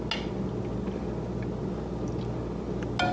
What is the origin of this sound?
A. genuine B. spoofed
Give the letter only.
A